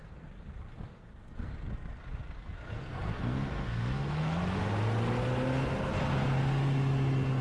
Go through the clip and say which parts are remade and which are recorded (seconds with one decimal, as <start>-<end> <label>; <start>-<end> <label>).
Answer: 0.0-4.4 remade; 4.4-7.4 recorded